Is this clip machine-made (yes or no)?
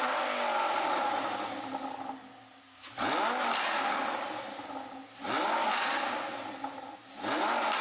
no